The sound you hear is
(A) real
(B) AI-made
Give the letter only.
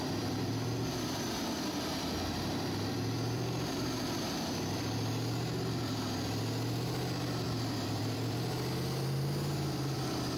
B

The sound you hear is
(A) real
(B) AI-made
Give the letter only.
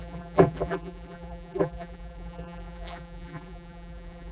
B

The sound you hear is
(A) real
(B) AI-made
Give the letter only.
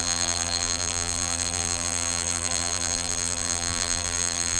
B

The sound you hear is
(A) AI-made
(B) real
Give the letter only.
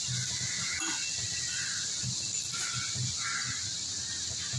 B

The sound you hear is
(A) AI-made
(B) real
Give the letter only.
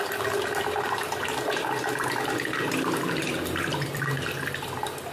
A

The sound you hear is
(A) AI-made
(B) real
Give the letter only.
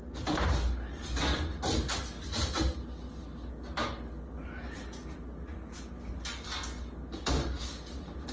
B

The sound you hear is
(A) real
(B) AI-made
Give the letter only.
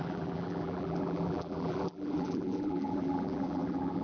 B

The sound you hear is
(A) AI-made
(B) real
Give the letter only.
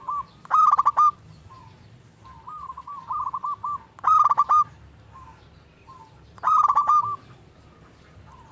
B